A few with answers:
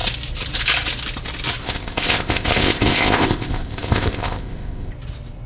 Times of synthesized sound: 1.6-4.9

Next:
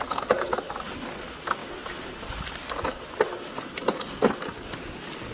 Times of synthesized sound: none